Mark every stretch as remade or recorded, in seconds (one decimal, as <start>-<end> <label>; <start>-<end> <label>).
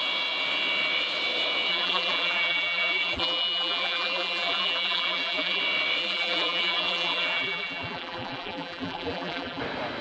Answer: 0.0-1.7 recorded; 1.7-5.6 remade; 5.6-6.0 recorded; 6.0-9.6 remade; 9.6-10.0 recorded